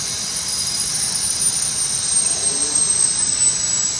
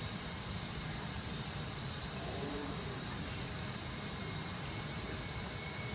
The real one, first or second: first